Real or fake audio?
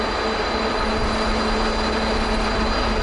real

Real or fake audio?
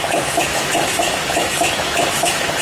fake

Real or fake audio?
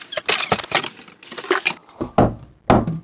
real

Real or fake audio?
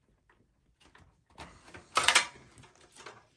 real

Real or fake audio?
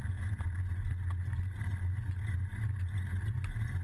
real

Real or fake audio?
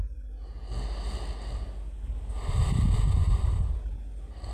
real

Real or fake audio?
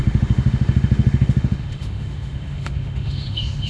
fake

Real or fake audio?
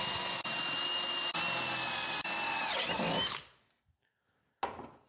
real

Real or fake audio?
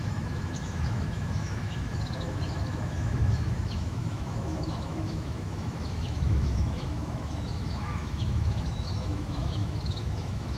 fake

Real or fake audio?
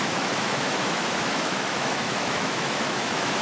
fake